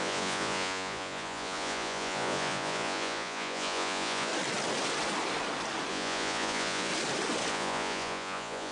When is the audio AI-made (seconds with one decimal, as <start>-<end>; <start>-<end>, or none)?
0.0-4.3; 5.9-6.9; 7.5-8.7

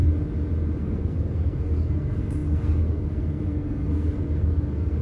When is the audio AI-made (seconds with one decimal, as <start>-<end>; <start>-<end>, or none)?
0.8-5.0

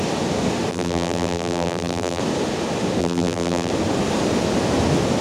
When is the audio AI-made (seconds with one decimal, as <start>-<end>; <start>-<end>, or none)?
0.7-2.2; 3.0-3.7

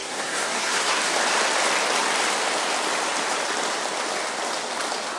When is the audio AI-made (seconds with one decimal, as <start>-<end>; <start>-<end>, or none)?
0.0-1.0

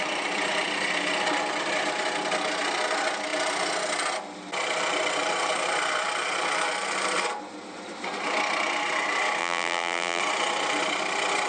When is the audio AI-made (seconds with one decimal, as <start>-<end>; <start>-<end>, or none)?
9.4-10.2